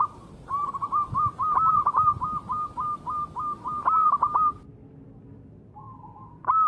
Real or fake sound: real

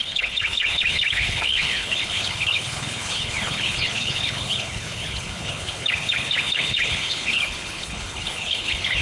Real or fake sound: fake